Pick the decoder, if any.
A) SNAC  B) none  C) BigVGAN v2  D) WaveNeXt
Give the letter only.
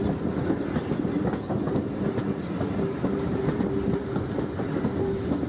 B